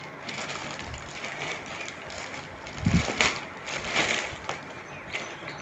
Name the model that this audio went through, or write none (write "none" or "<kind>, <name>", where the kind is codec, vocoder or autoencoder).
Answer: none